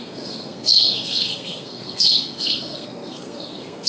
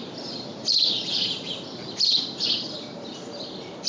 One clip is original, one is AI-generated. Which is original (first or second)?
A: second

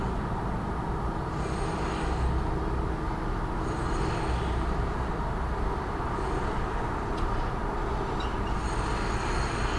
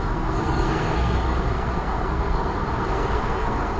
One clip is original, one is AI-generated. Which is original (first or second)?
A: first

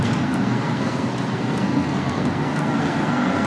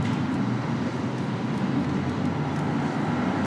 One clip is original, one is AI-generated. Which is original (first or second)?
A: second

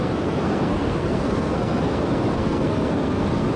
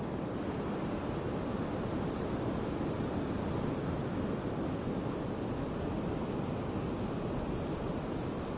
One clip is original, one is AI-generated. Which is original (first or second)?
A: second